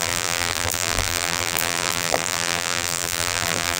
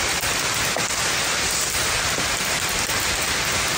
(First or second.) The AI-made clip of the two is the first